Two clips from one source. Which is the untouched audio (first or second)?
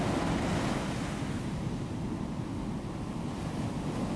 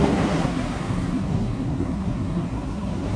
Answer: first